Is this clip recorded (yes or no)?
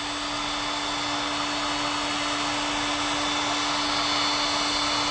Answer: yes